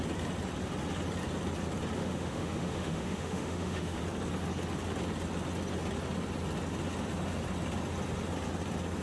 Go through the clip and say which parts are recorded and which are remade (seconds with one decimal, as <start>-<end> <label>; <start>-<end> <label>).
0.0-2.0 recorded; 2.0-4.0 remade; 4.0-9.0 recorded